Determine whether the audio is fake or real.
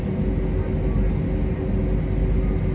real